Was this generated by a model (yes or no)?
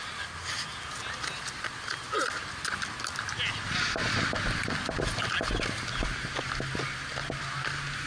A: no